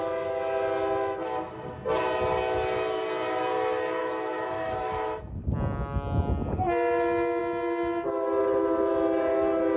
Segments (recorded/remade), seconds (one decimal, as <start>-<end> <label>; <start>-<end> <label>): 0.0-4.0 recorded; 4.0-5.2 remade; 5.2-9.8 recorded

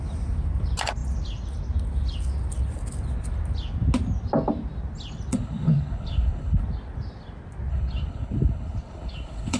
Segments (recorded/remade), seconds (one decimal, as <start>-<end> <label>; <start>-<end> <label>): 0.0-5.3 recorded; 5.3-6.6 remade; 6.6-7.7 recorded; 7.7-9.6 remade